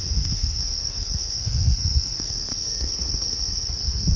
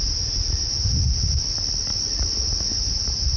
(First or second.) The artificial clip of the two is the first